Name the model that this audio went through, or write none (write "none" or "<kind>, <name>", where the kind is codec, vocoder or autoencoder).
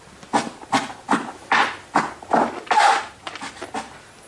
none